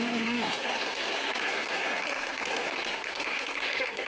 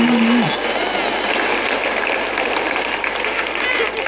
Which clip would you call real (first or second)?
second